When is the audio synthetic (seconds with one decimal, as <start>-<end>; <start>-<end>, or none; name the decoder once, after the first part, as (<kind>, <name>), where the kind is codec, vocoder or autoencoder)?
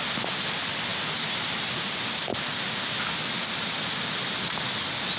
none